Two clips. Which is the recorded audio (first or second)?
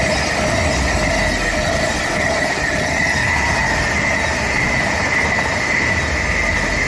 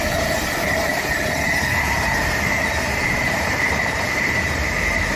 first